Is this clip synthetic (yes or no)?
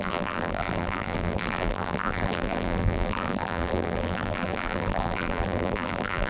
yes